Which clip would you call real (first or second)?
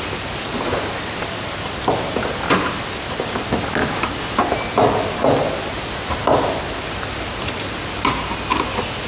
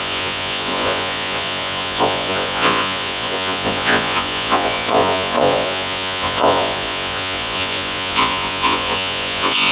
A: first